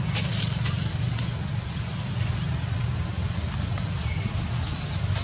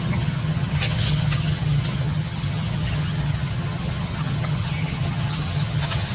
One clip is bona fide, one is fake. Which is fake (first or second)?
second